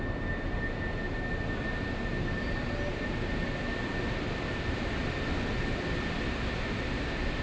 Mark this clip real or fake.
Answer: real